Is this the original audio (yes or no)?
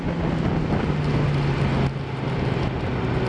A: yes